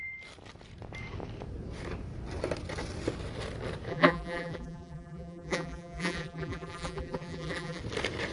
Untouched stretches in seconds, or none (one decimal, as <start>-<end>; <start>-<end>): 0.0-3.9; 7.8-8.3